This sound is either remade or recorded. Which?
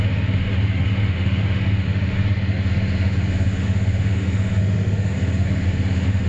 remade